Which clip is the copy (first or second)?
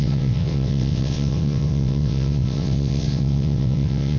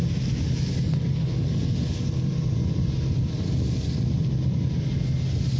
first